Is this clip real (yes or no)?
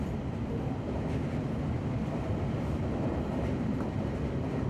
yes